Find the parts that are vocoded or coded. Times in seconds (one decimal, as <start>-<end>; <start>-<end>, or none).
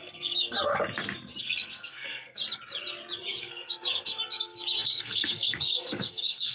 0.0-0.7; 1.4-2.4; 3.4-6.5